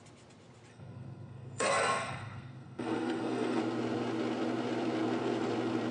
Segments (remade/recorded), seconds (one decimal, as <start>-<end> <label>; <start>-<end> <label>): 0.0-0.7 recorded; 0.7-3.6 remade; 3.6-5.9 recorded